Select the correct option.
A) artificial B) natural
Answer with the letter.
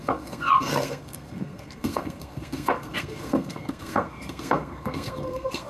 A